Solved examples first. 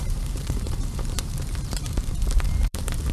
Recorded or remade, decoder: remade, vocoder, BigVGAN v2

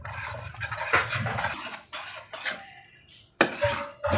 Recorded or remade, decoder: remade, vocoder, BigVGAN v2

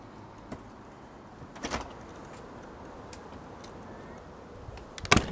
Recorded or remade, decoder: recorded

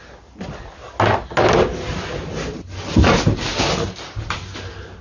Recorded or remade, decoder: recorded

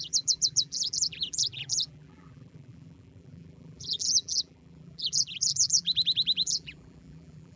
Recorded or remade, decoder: remade, vocoder, BigVGAN v2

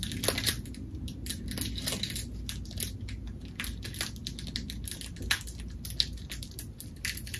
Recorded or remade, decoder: recorded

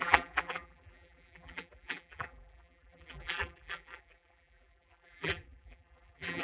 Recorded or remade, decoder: remade, vocoder, BigVGAN v2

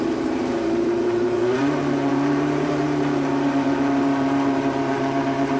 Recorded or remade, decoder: remade, vocoder, BigVGAN v2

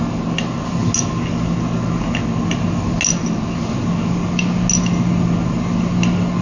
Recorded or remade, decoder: recorded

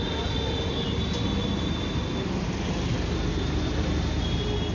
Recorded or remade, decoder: recorded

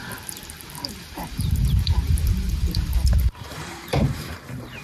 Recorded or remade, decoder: remade, vocoder, BigVGAN v2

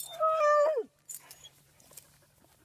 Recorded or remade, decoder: remade, vocoder, BigVGAN v2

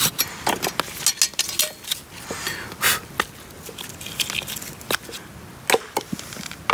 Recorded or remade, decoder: recorded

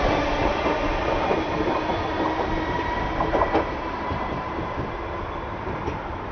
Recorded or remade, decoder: remade, vocoder, BigVGAN v2